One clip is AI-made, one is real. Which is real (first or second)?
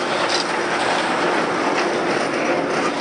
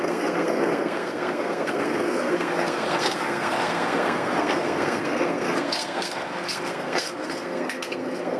first